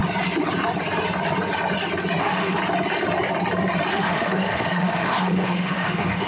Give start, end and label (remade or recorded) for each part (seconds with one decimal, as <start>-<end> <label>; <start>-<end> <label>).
0.0-2.2 recorded; 2.2-2.6 remade; 2.6-3.9 recorded; 3.9-6.3 remade